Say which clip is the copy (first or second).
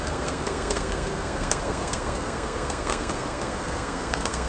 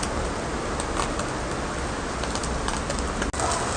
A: first